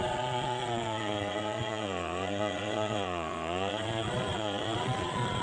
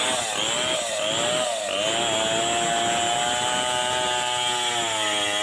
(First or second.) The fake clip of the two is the first